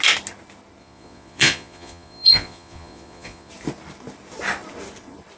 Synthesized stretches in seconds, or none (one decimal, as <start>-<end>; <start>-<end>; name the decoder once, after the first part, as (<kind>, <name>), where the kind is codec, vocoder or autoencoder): 0.8-3.5 (vocoder, Vocos)